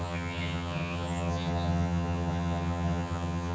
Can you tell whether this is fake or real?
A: fake